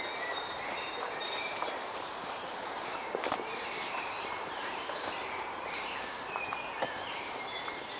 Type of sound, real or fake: fake